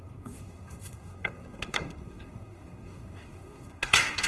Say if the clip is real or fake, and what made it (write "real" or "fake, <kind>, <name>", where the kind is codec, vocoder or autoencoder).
fake, codec, SNAC